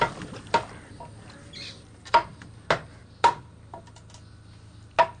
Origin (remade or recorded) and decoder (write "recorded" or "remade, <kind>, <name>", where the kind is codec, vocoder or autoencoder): recorded